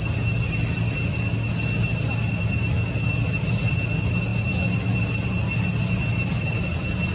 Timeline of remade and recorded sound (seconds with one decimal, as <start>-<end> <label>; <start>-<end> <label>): 0.0-7.1 recorded